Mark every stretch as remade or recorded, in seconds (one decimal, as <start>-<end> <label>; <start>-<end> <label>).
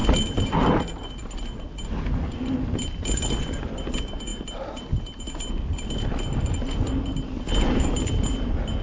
0.0-8.8 recorded